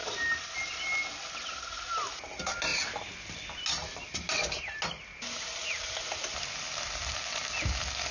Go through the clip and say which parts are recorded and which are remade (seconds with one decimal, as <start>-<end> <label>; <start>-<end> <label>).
0.0-8.1 recorded